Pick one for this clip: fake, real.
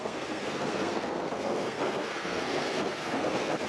fake